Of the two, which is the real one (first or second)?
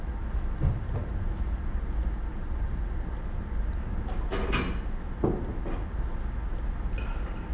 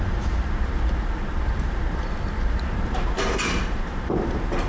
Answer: first